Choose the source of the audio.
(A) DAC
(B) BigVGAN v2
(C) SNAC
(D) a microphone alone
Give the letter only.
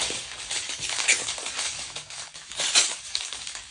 A